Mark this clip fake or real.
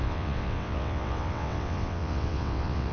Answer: fake